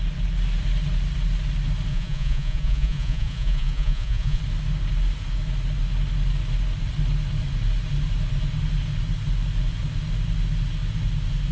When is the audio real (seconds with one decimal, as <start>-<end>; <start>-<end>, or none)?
0.0-1.9; 4.4-11.5